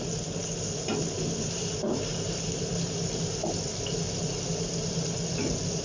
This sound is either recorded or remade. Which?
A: recorded